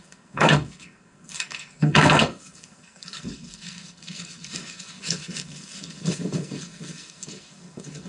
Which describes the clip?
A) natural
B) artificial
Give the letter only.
B